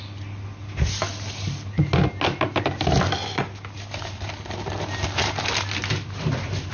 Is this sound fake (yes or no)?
no